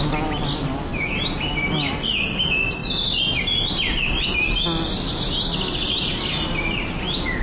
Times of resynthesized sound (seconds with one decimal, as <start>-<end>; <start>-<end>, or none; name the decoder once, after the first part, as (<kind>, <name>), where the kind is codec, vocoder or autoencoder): none